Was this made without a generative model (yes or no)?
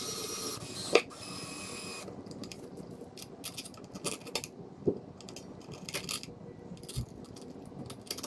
yes